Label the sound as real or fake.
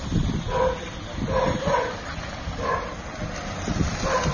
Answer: real